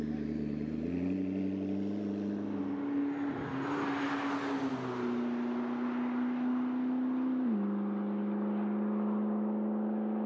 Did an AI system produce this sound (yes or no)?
no